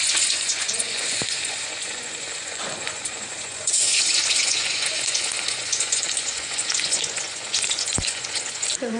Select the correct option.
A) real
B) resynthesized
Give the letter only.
B